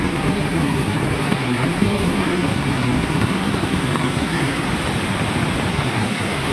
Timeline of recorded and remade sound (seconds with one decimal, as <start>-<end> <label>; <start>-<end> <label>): 0.0-4.7 remade; 4.7-5.7 recorded; 5.7-6.5 remade